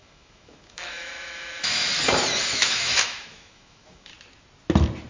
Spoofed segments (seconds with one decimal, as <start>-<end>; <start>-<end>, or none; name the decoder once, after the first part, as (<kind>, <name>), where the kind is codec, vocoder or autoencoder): 0.0-1.9 (autoencoder, DAC-VAE); 2.4-4.1